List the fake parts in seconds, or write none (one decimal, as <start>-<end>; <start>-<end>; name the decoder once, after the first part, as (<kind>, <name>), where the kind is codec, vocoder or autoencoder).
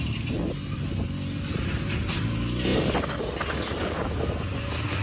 none